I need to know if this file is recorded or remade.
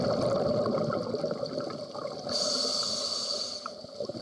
recorded